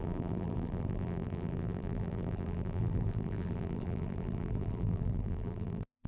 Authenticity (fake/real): fake